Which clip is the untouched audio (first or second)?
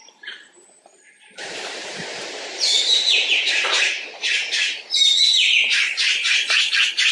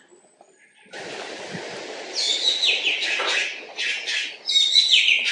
second